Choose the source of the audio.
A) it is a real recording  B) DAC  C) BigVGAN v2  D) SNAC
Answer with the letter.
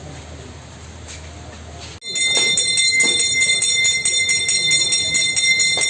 A